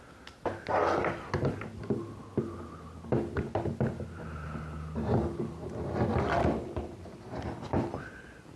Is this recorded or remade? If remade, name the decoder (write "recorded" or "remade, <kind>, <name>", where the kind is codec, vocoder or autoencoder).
recorded